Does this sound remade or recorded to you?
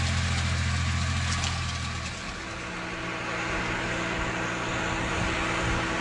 recorded